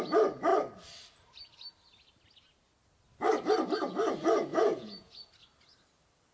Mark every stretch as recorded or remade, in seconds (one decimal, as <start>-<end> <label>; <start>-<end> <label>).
0.0-4.5 recorded; 4.5-5.3 remade; 5.3-6.3 recorded